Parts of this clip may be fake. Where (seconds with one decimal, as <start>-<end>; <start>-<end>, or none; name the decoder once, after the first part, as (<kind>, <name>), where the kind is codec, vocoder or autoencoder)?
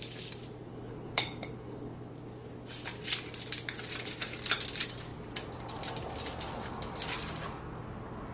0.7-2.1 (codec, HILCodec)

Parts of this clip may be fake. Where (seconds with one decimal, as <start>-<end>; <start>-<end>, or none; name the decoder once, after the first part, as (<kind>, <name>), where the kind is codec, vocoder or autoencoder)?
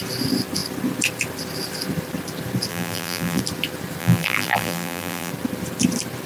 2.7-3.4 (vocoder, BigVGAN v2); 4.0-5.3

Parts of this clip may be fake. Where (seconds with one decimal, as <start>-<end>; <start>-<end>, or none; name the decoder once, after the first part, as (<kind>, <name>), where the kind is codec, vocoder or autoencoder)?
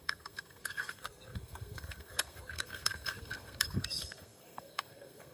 0.0-5.3 (codec, SNAC)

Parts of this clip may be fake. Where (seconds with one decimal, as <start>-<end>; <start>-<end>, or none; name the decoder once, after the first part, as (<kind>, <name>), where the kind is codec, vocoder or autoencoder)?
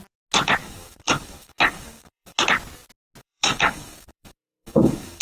0.6-2.4 (codec, DAC); 3.2-5.2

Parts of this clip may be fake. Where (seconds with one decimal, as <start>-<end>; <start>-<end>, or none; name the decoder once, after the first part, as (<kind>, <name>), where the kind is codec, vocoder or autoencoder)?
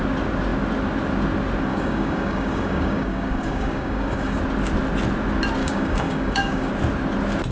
1.7-4.4 (codec, DAC); 5.6-6.7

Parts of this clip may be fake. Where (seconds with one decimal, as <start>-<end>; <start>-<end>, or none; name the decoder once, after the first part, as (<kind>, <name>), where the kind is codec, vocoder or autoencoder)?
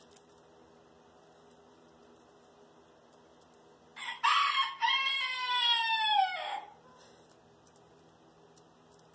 none